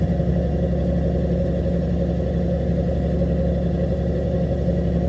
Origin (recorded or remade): recorded